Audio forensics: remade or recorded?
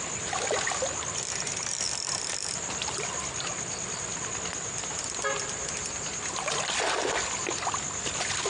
recorded